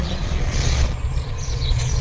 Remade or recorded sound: remade